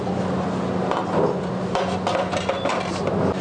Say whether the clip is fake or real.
real